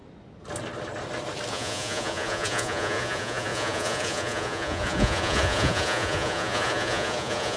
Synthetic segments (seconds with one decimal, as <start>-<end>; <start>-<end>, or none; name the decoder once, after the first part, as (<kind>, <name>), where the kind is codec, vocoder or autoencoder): 1.5-7.6 (vocoder, Vocos)